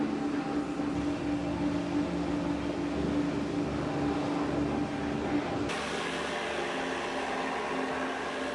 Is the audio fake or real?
real